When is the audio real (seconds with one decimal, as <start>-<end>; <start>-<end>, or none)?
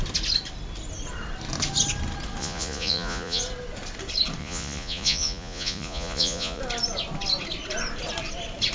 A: 0.0-2.4; 3.4-4.4; 6.6-8.7